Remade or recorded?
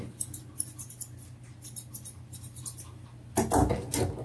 recorded